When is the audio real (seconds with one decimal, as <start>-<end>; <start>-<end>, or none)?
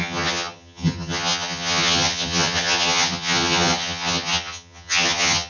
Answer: none